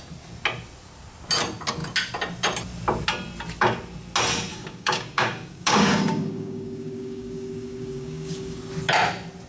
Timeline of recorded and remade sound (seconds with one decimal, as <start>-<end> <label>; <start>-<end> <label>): 0.0-4.5 recorded; 4.5-8.6 remade; 8.6-9.5 recorded